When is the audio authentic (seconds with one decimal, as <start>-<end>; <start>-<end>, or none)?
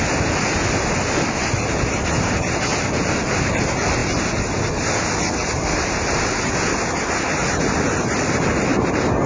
0.0-8.7